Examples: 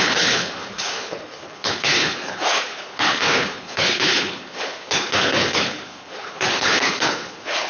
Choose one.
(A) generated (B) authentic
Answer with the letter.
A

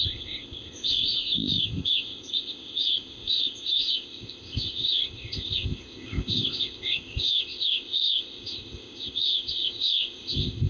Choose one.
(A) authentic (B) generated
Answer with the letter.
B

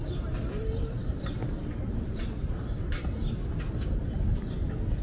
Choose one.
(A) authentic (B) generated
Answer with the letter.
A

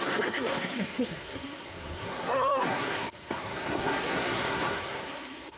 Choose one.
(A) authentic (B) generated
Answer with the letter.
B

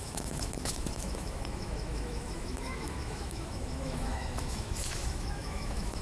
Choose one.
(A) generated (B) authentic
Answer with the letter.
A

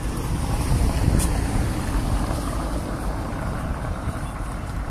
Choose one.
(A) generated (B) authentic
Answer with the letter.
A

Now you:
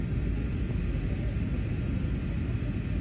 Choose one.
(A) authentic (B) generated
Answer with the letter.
A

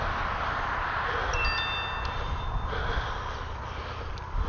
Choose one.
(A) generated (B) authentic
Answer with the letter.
B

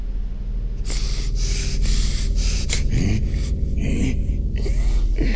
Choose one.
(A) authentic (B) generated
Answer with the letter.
A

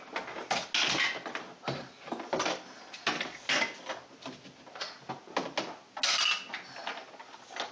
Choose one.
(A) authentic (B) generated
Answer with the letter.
A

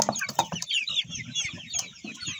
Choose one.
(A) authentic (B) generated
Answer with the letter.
A